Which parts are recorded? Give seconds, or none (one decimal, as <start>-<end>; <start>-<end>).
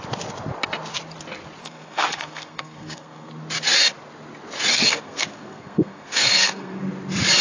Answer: 0.0-1.6; 3.3-4.7; 6.8-7.4